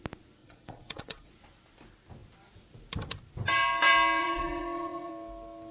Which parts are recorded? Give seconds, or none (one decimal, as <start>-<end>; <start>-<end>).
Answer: 0.0-0.4; 1.3-4.2; 5.1-5.7